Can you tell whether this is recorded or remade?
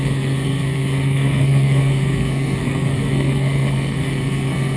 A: remade